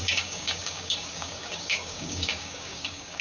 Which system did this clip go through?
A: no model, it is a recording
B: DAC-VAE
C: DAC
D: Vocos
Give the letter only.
C